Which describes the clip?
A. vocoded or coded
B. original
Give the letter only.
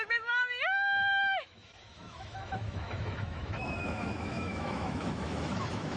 A